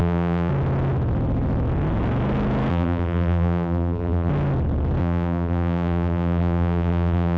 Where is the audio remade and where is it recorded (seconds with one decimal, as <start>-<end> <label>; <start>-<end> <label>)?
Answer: 0.0-0.5 remade; 0.5-2.7 recorded; 2.7-4.3 remade; 4.3-5.0 recorded; 5.0-7.4 remade